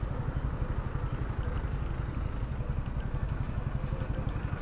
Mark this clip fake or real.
real